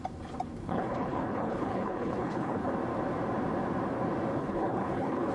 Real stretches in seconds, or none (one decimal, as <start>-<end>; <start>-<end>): 0.0-0.6; 2.7-4.4